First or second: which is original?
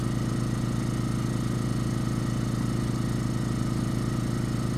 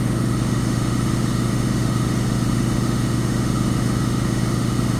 first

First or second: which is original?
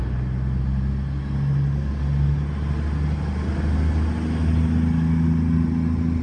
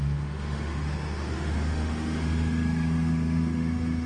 first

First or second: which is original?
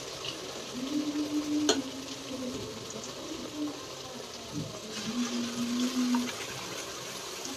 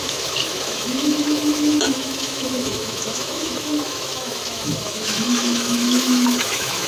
first